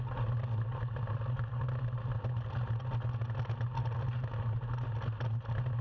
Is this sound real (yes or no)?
yes